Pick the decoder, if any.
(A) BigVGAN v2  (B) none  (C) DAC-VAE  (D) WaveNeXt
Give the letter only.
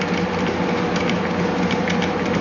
B